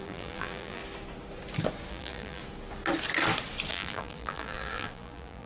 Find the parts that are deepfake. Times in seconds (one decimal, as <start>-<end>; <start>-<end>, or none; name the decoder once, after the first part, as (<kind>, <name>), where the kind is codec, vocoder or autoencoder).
0.0-0.8 (vocoder, BigVGAN v2); 1.9-2.4; 3.7-5.5